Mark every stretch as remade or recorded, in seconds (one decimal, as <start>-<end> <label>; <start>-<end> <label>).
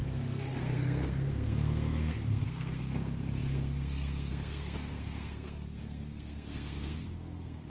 0.0-7.7 remade